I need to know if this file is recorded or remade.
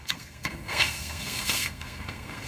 remade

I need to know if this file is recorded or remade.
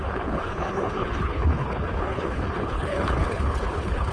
remade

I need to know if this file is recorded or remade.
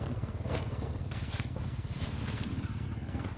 remade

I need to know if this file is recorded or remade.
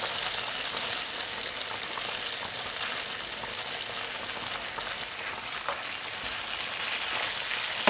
recorded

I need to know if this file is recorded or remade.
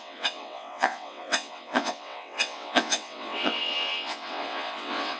remade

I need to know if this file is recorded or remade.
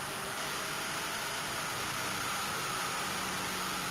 recorded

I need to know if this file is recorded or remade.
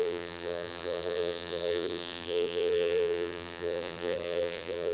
remade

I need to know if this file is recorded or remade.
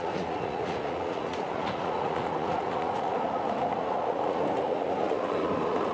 remade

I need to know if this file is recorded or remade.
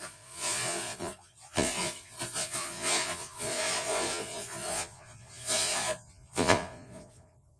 remade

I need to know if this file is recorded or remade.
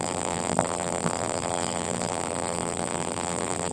remade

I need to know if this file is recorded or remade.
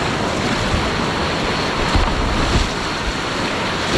recorded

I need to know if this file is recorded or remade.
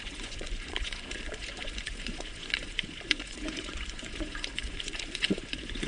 remade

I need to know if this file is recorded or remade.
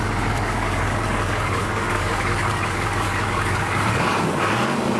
remade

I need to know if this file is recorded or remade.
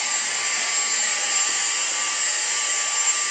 recorded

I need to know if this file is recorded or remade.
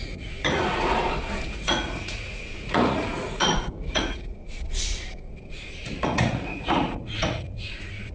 remade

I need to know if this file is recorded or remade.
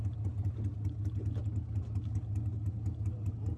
recorded